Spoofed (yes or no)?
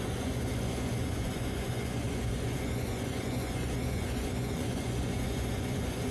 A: yes